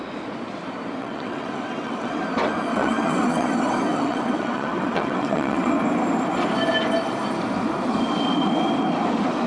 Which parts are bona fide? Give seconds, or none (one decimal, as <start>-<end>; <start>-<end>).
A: 0.0-1.0; 2.2-2.7; 3.5-3.9; 5.7-9.5